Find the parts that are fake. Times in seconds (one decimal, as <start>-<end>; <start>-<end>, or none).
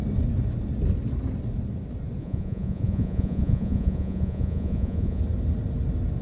2.2-5.2